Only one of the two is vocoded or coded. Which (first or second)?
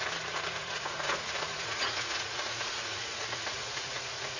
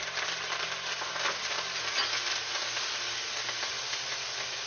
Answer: first